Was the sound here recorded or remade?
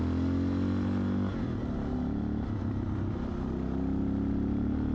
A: recorded